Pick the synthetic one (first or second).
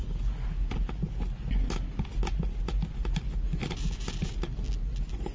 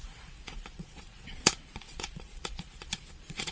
second